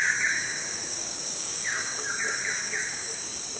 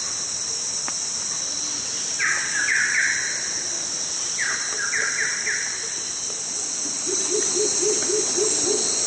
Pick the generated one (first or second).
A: first